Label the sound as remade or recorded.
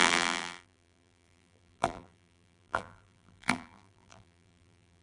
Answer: remade